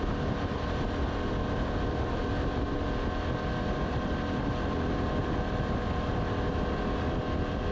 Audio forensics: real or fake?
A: real